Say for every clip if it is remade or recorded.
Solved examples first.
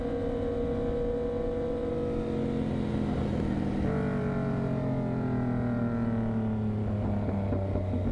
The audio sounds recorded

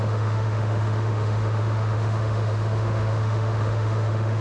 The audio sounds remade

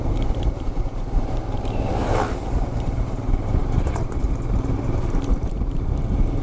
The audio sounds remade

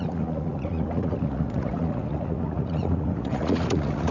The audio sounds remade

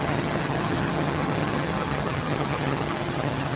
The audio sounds remade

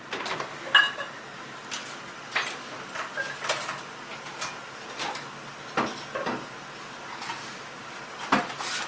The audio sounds recorded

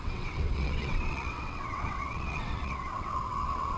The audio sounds remade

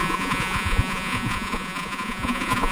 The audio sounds remade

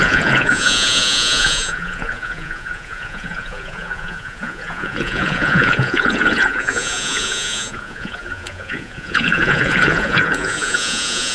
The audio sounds remade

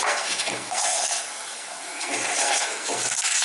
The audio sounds remade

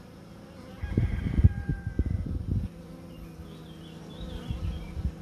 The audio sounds recorded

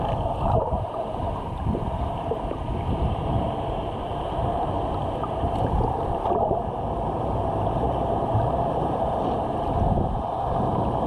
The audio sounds remade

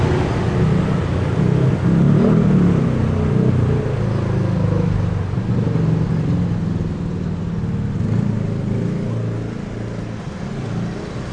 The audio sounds recorded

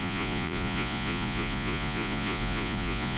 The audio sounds remade